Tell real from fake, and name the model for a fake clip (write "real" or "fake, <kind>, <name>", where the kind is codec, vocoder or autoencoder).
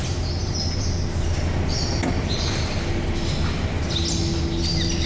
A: real